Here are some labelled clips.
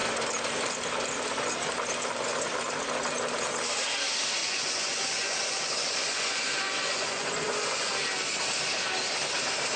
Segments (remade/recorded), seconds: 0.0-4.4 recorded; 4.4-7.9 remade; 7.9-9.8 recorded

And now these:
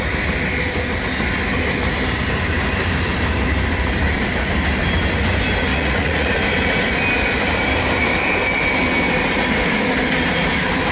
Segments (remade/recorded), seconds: 0.0-5.7 recorded; 5.7-6.4 remade; 6.4-10.9 recorded

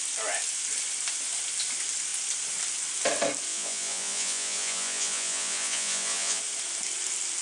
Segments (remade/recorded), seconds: 0.0-3.5 recorded; 3.5-6.4 remade; 6.4-7.4 recorded

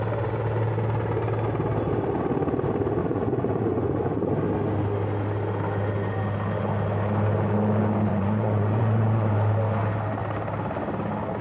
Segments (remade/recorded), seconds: 0.0-3.0 recorded; 3.0-4.3 remade; 4.3-8.1 recorded; 8.1-9.3 remade; 9.3-11.4 recorded

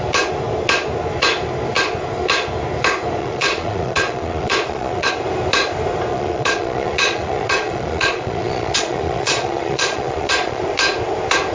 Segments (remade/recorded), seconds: 0.0-3.2 recorded; 3.2-5.1 remade; 5.1-6.1 recorded; 6.1-10.6 remade; 10.6-11.5 recorded

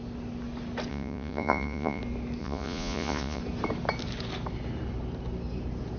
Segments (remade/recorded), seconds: 0.0-0.9 recorded; 0.9-2.0 remade; 2.0-2.4 recorded; 2.4-3.4 remade; 3.4-6.0 recorded

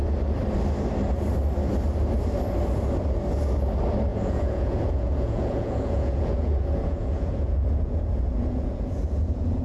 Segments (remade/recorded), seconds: 0.0-4.1 recorded; 4.1-9.6 remade

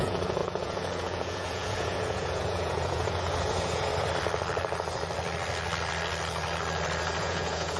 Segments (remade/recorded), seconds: 0.0-3.9 remade; 3.9-7.2 recorded; 7.2-7.8 remade